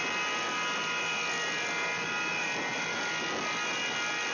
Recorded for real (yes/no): yes